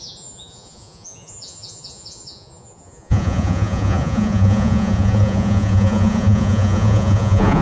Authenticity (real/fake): fake